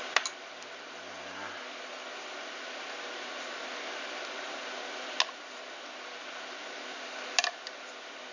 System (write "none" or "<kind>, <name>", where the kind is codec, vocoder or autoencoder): none